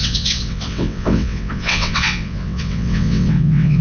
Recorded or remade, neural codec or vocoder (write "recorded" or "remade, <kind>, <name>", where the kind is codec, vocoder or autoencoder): remade, vocoder, WaveNeXt